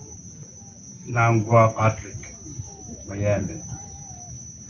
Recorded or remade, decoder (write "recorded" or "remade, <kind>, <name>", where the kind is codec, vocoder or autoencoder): recorded